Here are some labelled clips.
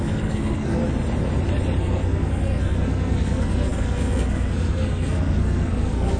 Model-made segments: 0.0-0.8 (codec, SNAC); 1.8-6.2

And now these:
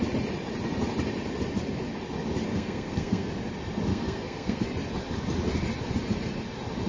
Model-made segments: 2.5-3.3 (codec, SNAC); 3.9-4.6

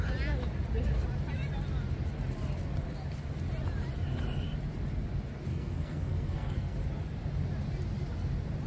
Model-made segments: 5.5-6.8 (codec, SNAC)

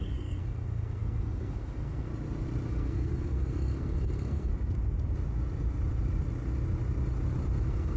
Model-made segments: 0.0-2.1 (codec, SNAC); 2.7-4.5; 7.6-8.0